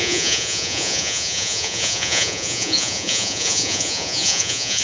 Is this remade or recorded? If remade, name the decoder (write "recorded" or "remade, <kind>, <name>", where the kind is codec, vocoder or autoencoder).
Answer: remade, vocoder, Vocos